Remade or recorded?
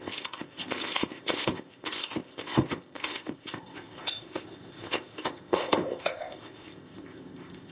remade